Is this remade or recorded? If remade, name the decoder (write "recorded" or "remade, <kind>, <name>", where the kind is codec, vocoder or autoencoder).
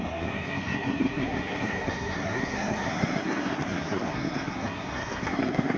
remade, codec, SNAC